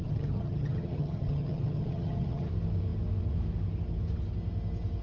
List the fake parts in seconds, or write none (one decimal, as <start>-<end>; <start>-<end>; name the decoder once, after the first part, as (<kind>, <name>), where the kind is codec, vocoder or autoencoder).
0.0-2.5 (vocoder, HiFi-GAN)